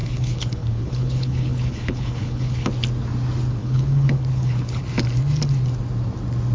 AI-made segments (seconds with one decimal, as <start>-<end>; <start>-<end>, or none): 0.0-2.7; 3.6-4.8